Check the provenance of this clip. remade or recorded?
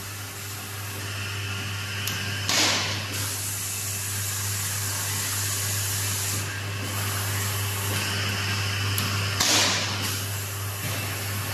recorded